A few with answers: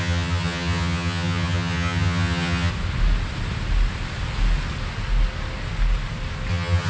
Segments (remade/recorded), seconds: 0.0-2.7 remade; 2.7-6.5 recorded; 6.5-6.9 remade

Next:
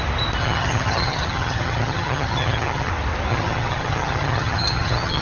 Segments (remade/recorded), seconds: 0.0-0.4 recorded; 0.4-2.9 remade; 2.9-3.3 recorded; 3.3-5.2 remade

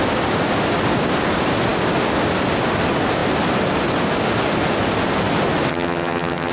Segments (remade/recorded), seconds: 0.0-5.7 recorded; 5.7-6.5 remade

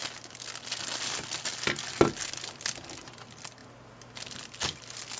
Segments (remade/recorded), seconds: 0.0-5.2 recorded